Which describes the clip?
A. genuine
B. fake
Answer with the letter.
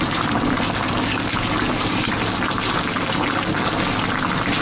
A